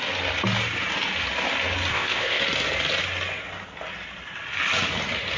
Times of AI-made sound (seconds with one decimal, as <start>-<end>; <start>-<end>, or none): 1.9-2.4